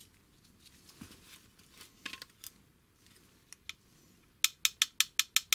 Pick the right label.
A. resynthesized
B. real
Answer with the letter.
B